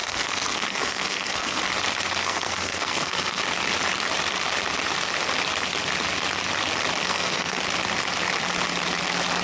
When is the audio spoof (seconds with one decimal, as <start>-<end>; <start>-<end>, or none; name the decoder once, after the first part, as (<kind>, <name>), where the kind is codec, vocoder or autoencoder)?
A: 0.0-1.6 (codec, SNAC); 2.2-3.4; 7.0-7.6